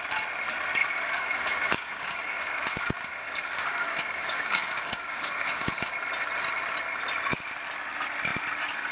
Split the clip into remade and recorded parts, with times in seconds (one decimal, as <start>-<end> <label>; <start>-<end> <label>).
0.0-0.8 recorded; 0.8-5.9 remade; 5.9-8.9 recorded